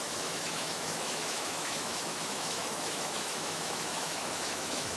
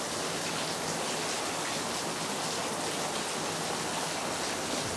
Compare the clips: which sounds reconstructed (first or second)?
first